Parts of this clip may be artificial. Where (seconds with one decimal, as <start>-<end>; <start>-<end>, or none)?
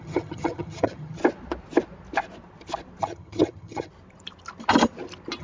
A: 0.0-1.2; 3.0-3.9